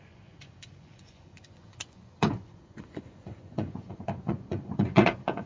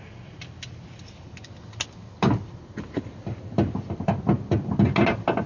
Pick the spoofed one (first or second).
first